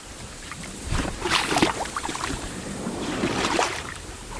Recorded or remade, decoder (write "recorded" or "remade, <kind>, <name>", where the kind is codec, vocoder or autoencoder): remade, vocoder, BigVGAN v2